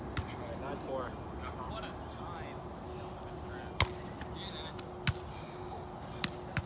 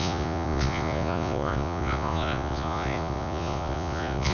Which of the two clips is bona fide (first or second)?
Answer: first